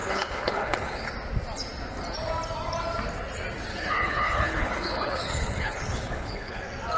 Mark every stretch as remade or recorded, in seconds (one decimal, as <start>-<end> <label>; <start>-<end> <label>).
0.0-1.1 remade; 1.1-3.7 recorded; 3.7-6.6 remade; 6.6-7.0 recorded